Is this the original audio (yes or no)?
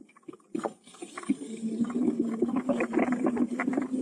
yes